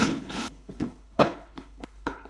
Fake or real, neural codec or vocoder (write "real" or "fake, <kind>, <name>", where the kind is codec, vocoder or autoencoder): fake, codec, HILCodec